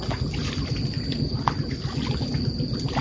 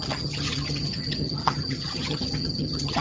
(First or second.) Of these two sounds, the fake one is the second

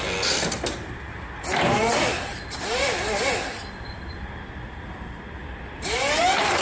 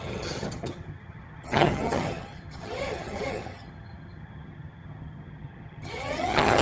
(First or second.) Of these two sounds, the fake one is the second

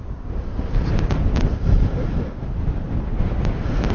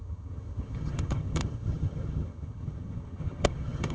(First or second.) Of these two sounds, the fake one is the second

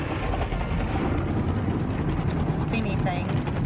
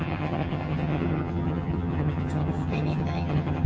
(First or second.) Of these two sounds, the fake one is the second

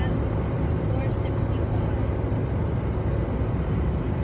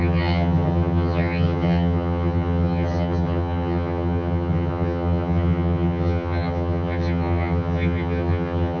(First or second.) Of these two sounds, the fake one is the second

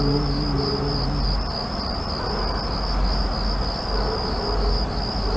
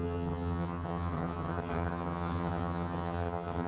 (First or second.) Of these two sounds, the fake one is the second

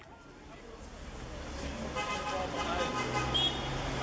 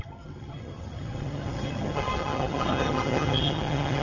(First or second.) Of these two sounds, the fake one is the second